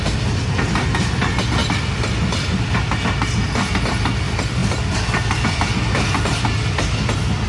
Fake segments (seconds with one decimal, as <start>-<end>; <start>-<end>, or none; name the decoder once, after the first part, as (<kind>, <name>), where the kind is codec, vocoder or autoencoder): none